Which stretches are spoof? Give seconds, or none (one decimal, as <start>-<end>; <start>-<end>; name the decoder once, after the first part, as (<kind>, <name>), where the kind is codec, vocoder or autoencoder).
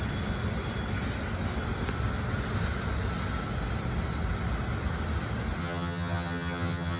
5.6-7.0 (vocoder, HiFi-GAN)